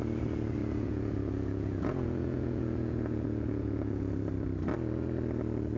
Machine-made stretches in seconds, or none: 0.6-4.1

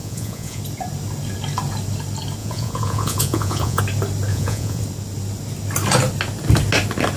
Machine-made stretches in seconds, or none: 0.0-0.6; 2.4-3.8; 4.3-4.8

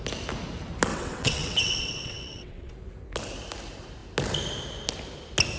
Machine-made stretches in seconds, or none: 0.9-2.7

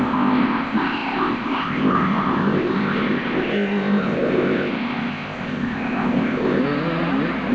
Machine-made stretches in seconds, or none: 0.0-6.6

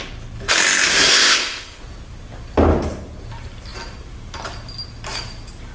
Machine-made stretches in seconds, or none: 1.1-1.8

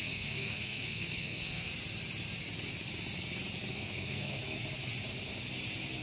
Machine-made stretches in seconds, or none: 0.0-1.7; 3.7-4.4